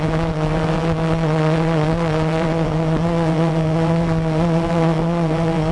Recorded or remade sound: remade